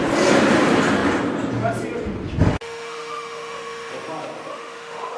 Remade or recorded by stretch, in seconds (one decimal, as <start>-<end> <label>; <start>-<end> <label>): 0.0-2.5 recorded; 2.5-3.9 remade; 3.9-4.5 recorded; 4.5-5.2 remade